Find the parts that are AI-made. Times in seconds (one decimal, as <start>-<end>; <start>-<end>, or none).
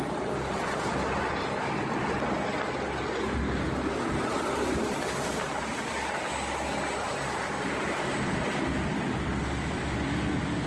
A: none